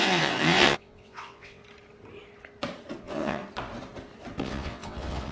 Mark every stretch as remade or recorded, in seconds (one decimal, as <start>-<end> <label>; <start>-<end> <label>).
0.0-1.6 remade; 1.6-3.0 recorded; 3.0-3.4 remade; 3.4-4.4 recorded; 4.4-5.3 remade